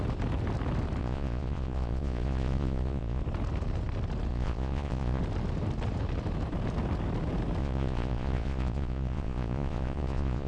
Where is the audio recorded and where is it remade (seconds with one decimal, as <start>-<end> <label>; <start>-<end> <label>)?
0.0-1.0 recorded; 1.0-3.2 remade; 3.2-4.3 recorded; 4.3-5.2 remade; 5.2-7.6 recorded; 7.6-10.5 remade